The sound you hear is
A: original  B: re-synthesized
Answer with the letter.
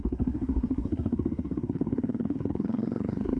B